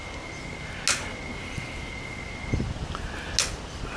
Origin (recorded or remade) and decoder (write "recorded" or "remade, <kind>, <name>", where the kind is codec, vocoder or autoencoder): recorded